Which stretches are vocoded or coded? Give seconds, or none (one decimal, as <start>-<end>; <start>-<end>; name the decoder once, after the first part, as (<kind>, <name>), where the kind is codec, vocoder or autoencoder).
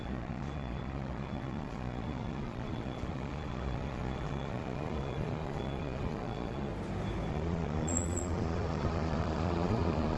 0.0-6.7 (vocoder, Vocos); 7.3-10.2